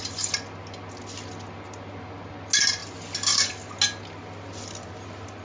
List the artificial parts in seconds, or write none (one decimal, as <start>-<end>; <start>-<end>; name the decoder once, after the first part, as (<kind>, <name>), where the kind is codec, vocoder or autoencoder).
none